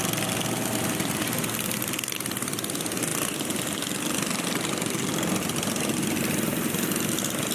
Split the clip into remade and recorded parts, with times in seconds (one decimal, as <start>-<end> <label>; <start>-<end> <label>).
0.0-7.5 recorded